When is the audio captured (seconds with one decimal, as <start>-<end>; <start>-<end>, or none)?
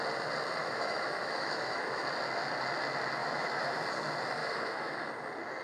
0.0-0.6; 2.0-3.2; 3.8-4.4; 5.1-5.6